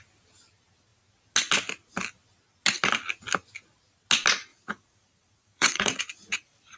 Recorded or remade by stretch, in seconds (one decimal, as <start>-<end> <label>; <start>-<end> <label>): 0.0-4.5 recorded; 4.5-6.8 remade